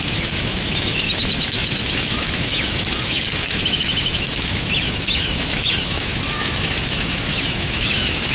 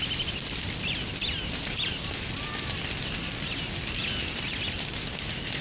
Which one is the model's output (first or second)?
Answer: first